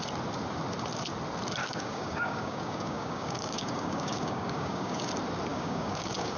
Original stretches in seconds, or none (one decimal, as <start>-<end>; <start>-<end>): 0.0-1.6; 5.1-5.5